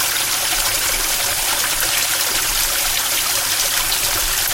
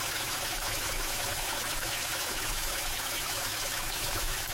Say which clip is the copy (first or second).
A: second